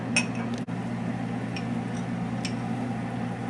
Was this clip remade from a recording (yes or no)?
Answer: no